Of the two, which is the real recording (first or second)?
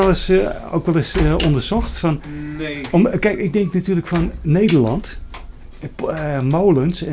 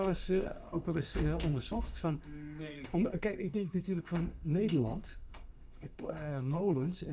first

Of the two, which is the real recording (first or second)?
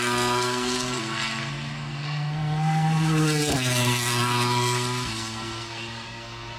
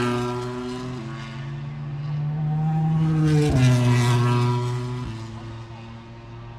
second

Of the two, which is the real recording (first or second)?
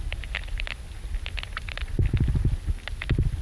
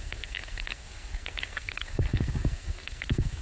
first